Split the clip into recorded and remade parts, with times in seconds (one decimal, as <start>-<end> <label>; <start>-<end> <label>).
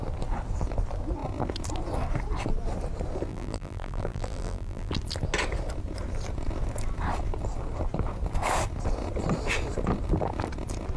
0.0-3.3 recorded; 3.3-4.9 remade; 4.9-11.0 recorded